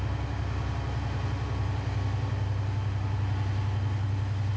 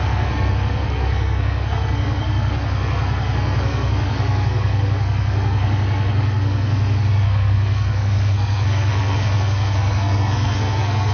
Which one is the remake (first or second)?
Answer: second